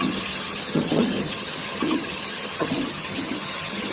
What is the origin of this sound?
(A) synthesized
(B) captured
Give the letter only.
A